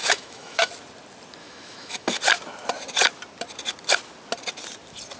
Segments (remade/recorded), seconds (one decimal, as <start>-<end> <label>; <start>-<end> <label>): 0.0-0.7 remade; 0.7-1.4 recorded; 1.4-2.2 remade; 2.2-5.2 recorded